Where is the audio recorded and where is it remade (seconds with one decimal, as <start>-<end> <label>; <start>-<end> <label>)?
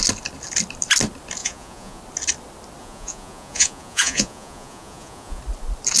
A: 0.0-1.4 recorded; 1.4-2.0 remade; 2.0-2.8 recorded; 2.8-5.4 remade; 5.4-6.0 recorded